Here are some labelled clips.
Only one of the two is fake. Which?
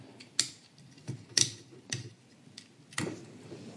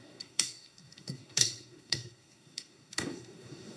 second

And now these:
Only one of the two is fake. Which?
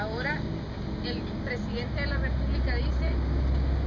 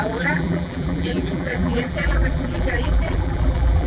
second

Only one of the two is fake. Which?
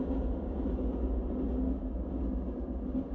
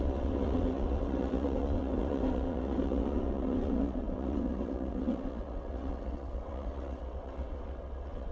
second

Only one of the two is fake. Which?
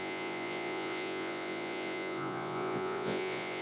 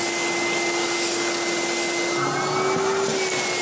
first